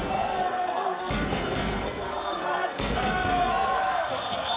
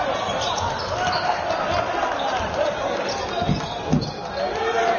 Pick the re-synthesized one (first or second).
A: first